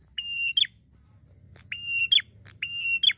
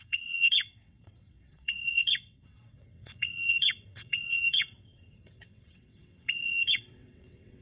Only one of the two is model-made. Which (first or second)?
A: second